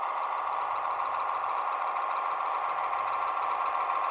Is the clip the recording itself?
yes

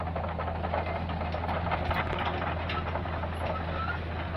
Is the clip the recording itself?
yes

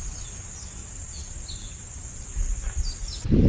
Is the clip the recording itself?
yes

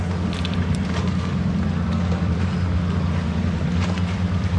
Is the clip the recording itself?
no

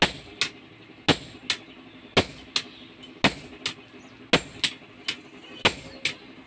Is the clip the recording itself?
yes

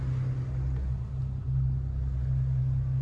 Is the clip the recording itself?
yes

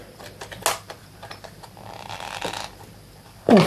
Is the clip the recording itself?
yes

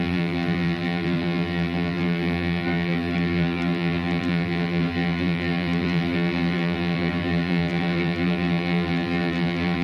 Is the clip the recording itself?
no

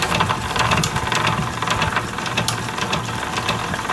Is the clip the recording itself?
no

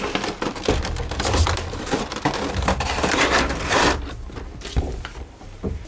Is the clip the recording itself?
no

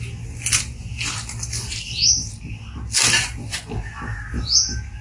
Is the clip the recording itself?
yes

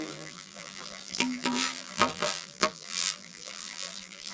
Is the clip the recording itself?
no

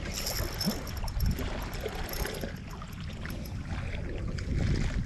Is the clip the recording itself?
yes